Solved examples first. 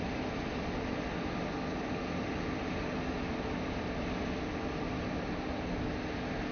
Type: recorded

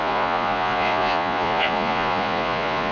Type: remade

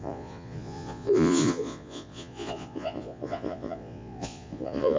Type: remade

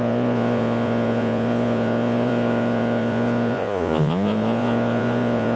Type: remade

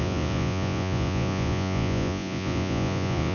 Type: remade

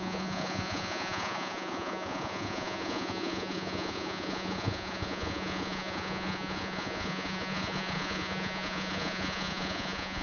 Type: remade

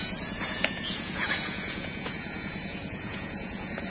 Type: remade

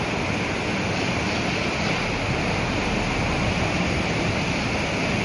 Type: recorded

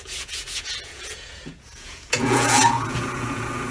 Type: remade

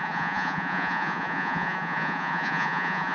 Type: remade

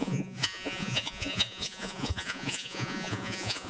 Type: remade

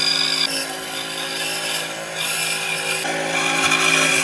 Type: recorded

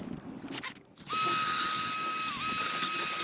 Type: recorded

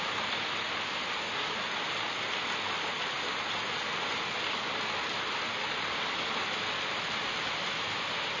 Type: recorded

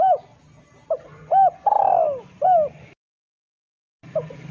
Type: recorded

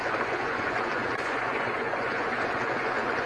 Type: remade